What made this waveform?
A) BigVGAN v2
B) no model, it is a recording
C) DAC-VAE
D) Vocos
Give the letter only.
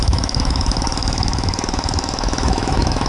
C